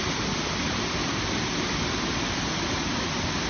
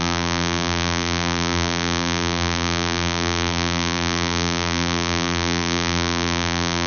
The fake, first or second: second